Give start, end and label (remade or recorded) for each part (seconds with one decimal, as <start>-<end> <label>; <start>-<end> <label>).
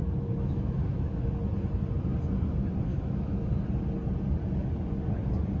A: 0.0-1.3 remade; 1.3-2.9 recorded; 2.9-3.5 remade; 3.5-5.6 recorded